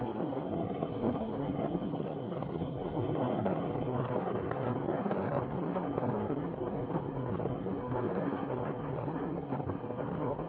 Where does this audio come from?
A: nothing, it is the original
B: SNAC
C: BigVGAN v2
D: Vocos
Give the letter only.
B